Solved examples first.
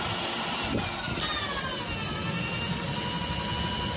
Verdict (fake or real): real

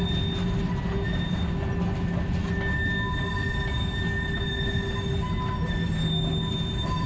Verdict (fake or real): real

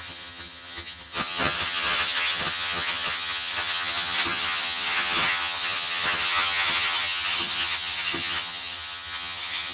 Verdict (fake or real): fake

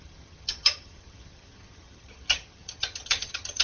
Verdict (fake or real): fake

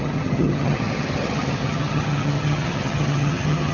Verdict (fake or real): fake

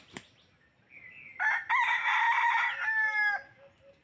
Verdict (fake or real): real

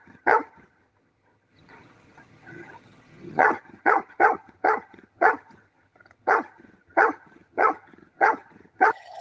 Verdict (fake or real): fake